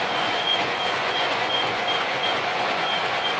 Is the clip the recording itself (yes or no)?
no